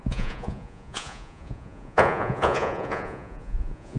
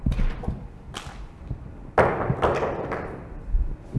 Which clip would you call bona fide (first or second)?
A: second